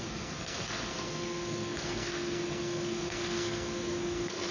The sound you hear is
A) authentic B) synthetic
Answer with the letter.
B